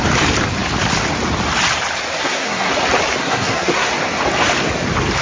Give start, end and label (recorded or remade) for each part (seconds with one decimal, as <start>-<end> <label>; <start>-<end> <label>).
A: 0.0-2.2 recorded; 2.2-2.7 remade; 2.7-3.2 recorded; 3.2-3.9 remade; 3.9-5.2 recorded